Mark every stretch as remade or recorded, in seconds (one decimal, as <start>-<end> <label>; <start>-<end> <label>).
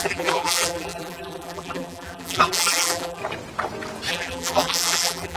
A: 0.0-3.2 remade; 3.2-4.1 recorded; 4.1-5.4 remade